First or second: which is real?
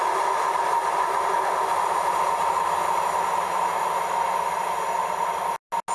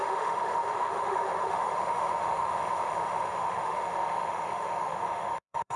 first